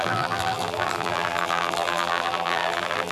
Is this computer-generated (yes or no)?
yes